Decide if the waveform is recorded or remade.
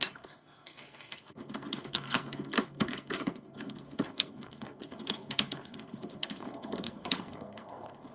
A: remade